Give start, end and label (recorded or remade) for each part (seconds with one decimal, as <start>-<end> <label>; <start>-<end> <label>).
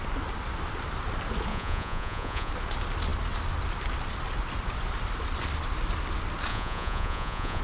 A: 0.0-1.5 recorded; 1.5-2.5 remade; 2.5-6.5 recorded; 6.5-7.6 remade